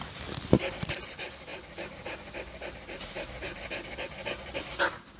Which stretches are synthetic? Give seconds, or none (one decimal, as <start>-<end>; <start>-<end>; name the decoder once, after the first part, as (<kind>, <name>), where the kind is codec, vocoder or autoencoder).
none